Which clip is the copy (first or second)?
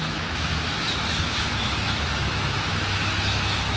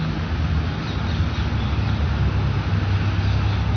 first